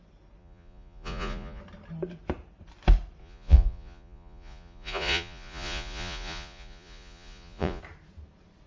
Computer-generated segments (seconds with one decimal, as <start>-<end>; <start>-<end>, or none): 0.4-1.6; 3.2-7.8